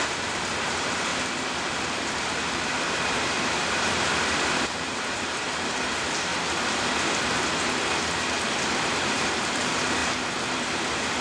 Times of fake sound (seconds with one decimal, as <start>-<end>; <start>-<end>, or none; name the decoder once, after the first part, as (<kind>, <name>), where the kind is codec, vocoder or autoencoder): 0.0-1.1 (vocoder, BigVGAN v2); 1.7-6.3; 8.5-10.0